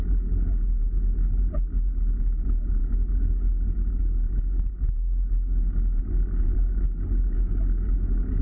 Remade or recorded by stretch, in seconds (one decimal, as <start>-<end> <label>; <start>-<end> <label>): 0.0-8.4 recorded